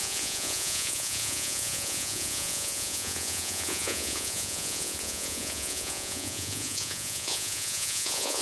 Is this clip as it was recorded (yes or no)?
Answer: no